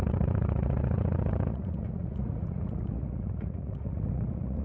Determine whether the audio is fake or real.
fake